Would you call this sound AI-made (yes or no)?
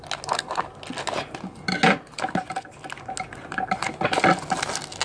no